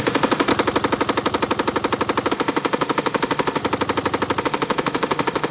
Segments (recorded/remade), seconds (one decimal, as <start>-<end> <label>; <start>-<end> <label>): 0.0-0.5 remade; 0.5-2.3 recorded; 2.3-3.6 remade; 3.6-4.4 recorded; 4.4-5.5 remade